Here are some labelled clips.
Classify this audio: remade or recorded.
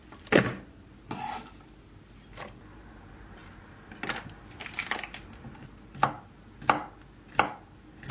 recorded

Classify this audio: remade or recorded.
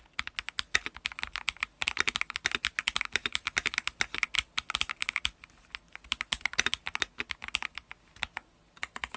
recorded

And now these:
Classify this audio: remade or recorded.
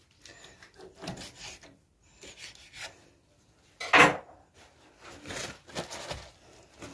recorded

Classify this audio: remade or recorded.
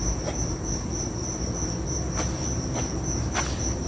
recorded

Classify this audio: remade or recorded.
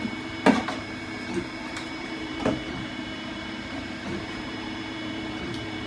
remade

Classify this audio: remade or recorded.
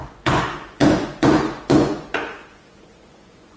remade